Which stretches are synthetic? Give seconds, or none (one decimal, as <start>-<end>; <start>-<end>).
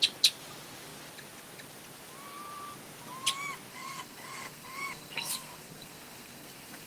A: 3.7-6.9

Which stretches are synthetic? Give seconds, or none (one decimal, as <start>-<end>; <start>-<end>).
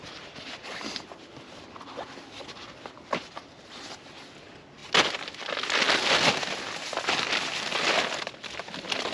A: none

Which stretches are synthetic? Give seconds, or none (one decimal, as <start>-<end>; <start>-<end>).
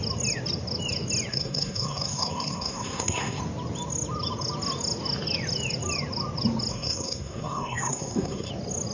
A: 1.3-3.4; 6.7-8.5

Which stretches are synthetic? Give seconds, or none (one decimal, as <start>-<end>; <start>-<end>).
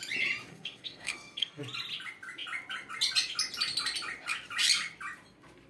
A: 0.5-1.6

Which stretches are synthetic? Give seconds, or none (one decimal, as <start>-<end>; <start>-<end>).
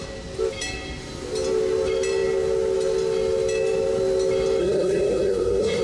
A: 4.6-5.8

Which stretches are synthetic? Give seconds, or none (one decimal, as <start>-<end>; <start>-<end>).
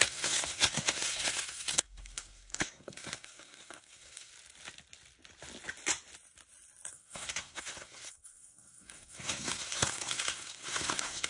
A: 0.0-4.3; 6.9-11.3